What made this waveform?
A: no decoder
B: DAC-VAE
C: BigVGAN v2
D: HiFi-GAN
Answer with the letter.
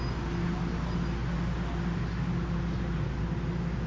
A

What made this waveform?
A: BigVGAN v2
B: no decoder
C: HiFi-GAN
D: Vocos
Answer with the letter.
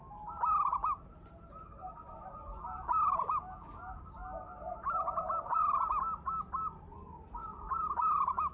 B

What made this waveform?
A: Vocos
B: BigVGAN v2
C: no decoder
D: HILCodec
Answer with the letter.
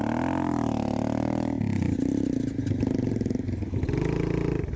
C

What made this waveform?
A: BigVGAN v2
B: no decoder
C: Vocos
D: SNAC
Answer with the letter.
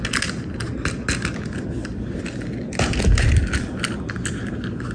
B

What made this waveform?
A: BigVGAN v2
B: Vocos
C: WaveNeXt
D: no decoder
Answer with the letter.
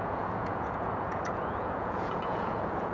B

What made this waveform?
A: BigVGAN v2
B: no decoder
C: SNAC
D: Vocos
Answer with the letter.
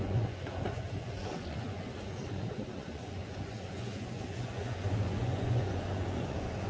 D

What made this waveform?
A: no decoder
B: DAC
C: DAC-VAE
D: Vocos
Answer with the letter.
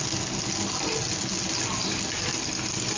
A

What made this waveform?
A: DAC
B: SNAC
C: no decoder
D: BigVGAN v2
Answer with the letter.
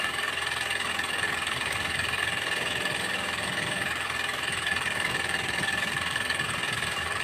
A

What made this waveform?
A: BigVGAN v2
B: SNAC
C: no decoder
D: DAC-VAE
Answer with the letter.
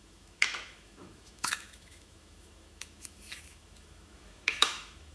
D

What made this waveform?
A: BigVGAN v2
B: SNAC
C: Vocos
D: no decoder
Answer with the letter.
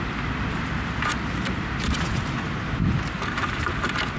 D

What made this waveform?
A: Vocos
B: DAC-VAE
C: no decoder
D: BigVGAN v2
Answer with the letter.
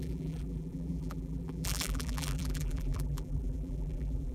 D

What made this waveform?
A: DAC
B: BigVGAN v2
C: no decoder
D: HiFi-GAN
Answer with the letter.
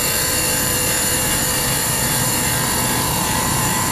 B